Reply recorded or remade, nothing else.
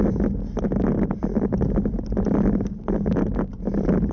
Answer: recorded